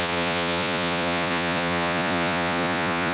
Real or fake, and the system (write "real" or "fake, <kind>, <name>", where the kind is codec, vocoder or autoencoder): fake, vocoder, Vocos